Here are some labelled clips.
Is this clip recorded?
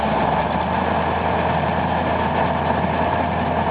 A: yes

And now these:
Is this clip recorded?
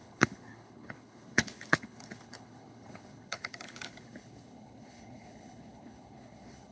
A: no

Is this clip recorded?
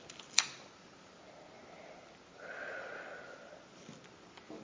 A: yes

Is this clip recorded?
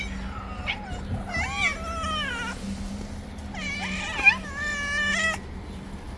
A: yes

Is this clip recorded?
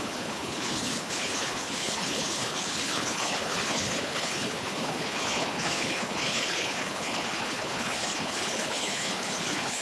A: no